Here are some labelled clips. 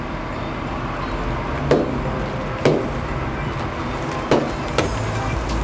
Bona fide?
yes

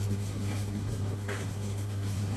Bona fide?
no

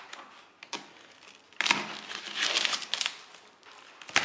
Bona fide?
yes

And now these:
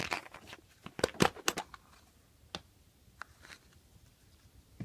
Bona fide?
yes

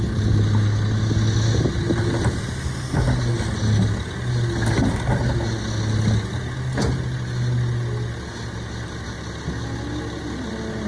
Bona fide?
yes